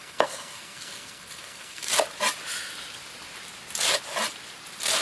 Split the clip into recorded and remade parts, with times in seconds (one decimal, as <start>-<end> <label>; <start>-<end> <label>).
0.0-1.9 remade; 1.9-5.0 recorded